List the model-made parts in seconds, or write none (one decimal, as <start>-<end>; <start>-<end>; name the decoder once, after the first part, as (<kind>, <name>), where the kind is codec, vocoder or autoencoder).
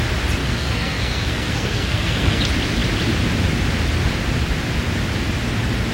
0.4-2.4 (codec, SNAC)